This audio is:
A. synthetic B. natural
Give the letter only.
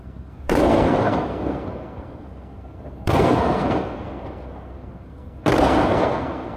A